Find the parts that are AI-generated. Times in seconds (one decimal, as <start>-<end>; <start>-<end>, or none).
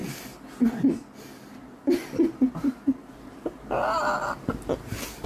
none